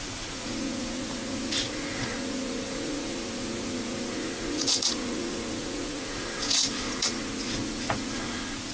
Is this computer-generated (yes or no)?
yes